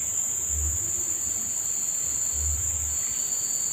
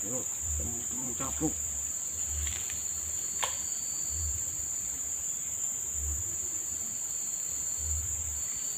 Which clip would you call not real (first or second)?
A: second